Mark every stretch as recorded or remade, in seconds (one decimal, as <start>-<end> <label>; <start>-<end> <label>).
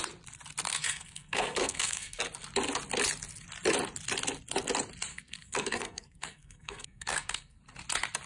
0.0-0.7 recorded; 0.7-2.2 remade; 2.2-5.1 recorded; 5.1-7.6 remade; 7.6-8.3 recorded